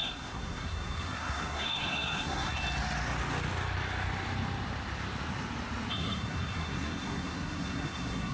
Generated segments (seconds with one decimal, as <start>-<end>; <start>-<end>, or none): 0.0-2.6; 5.9-8.3